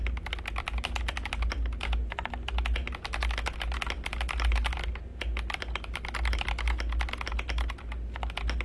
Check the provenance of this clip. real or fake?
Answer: real